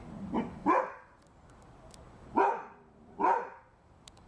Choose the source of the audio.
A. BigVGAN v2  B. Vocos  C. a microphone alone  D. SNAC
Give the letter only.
C